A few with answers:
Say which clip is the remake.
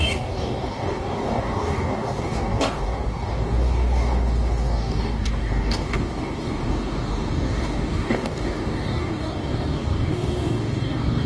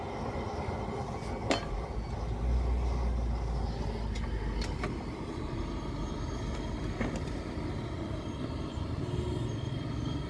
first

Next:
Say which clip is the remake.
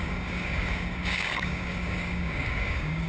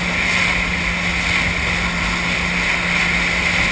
first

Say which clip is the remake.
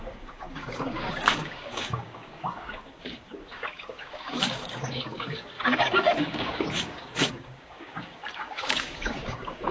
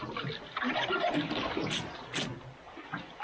first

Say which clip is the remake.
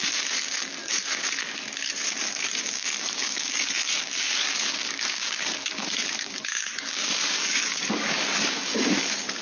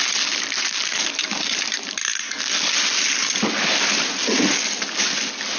first